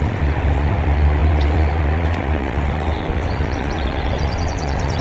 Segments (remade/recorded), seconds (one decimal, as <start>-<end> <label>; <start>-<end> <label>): 0.0-5.0 remade